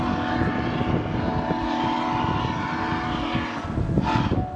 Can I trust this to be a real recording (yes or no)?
yes